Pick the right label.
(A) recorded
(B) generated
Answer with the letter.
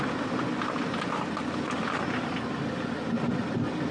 A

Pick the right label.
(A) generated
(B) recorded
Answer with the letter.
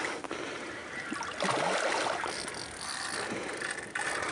B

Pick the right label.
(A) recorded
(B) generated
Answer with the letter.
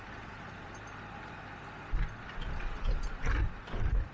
A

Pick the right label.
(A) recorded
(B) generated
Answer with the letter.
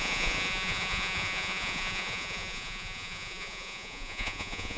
B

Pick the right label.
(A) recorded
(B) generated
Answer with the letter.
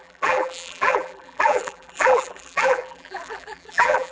B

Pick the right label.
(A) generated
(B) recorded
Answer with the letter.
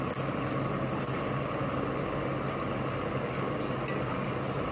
B